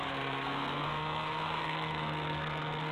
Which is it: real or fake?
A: fake